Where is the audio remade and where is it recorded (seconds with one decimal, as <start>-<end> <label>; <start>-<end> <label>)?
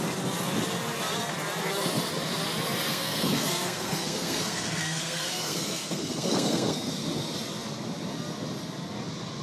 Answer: 0.0-2.9 recorded; 2.9-6.9 remade; 6.9-9.4 recorded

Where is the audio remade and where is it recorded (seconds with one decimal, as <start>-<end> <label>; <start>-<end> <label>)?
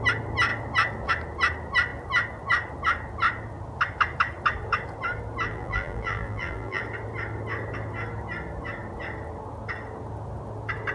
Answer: 0.0-5.5 recorded; 5.5-6.8 remade; 6.8-10.9 recorded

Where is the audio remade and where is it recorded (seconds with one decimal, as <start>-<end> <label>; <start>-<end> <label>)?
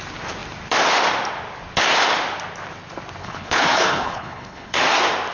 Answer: 0.0-3.2 recorded; 3.2-4.8 remade; 4.8-5.3 recorded